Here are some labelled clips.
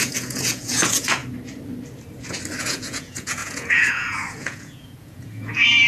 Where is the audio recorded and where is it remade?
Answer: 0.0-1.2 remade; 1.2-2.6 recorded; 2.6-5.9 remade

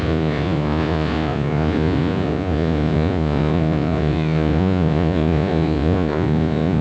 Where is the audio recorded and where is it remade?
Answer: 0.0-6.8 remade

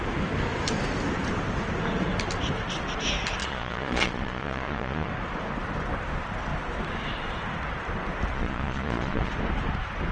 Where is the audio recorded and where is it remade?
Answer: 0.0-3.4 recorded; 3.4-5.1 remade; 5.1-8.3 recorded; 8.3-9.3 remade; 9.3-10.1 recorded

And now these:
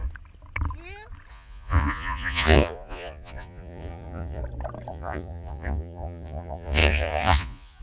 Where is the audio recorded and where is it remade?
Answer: 0.0-1.3 recorded; 1.3-4.4 remade; 4.4-4.9 recorded; 4.9-7.8 remade

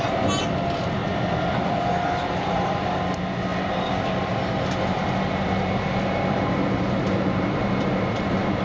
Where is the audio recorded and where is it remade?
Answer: 0.0-8.6 recorded